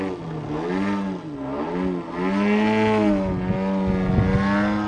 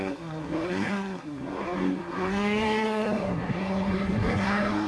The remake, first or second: second